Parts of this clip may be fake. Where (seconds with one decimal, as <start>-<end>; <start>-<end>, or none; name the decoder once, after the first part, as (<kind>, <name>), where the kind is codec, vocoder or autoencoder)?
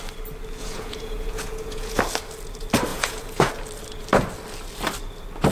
0.6-2.0 (vocoder, Vocos); 2.9-3.5